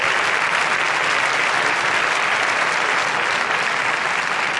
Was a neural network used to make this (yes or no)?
no